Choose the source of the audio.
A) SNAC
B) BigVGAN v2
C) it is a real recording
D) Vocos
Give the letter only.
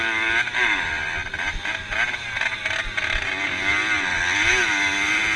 C